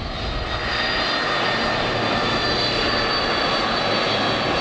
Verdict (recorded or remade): recorded